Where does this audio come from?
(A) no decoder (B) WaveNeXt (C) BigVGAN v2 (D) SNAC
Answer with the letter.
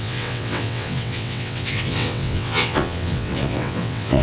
B